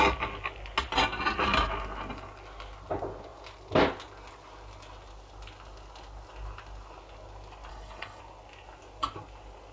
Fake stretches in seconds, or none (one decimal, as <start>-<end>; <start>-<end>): 7.7-8.2